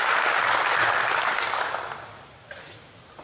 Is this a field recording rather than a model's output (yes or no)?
yes